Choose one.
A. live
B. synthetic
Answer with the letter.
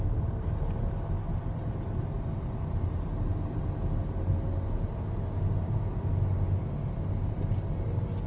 A